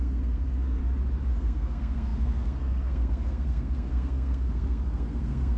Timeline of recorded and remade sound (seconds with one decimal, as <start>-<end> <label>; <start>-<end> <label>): 0.0-0.8 remade; 0.8-1.3 recorded; 1.3-5.6 remade